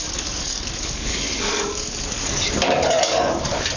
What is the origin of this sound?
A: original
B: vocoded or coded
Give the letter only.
B